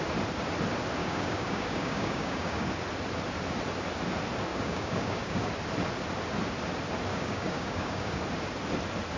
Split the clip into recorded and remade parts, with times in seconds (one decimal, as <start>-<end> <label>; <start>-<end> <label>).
0.0-1.0 recorded; 1.0-2.7 remade; 2.7-4.5 recorded; 4.5-5.5 remade; 5.5-7.1 recorded; 7.1-8.2 remade; 8.2-9.2 recorded